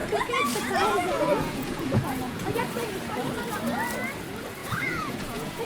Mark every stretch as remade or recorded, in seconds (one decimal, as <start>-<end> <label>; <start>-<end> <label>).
0.0-2.6 remade; 2.6-4.6 recorded; 4.6-5.6 remade